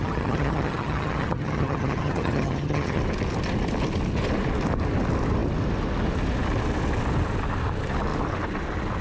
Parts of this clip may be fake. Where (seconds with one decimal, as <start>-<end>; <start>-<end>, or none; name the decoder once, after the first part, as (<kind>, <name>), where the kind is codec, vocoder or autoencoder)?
0.0-3.0 (vocoder, HiFi-GAN)